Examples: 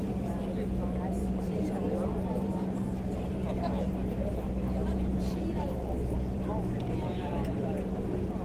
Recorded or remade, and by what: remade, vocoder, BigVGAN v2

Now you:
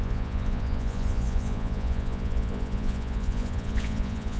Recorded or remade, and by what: remade, vocoder, Vocos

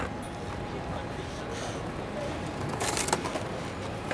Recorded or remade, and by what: recorded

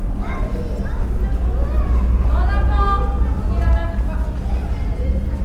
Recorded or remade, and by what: recorded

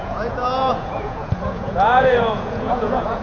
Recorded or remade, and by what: remade, vocoder, Vocos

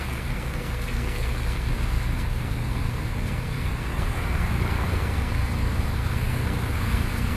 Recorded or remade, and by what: remade, codec, SNAC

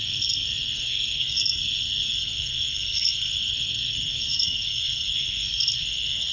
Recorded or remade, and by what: remade, codec, SNAC